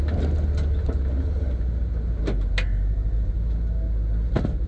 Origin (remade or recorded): recorded